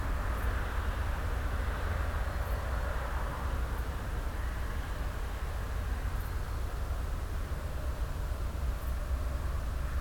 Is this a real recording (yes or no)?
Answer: yes